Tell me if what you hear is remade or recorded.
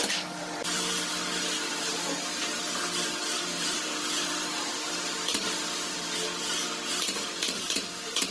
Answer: remade